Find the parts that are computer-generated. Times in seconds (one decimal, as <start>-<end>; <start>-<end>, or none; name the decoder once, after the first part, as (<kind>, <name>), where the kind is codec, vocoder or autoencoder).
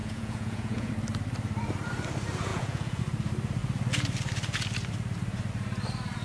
0.0-0.9 (vocoder, Vocos); 2.5-3.0